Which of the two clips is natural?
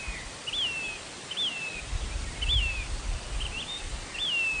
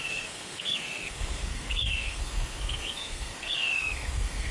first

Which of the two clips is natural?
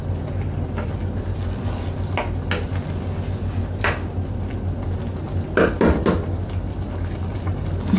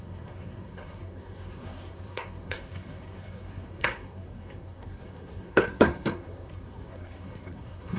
first